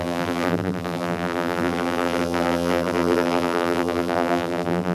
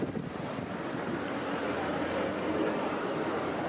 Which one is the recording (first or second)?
second